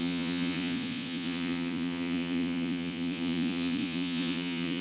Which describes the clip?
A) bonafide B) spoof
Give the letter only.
B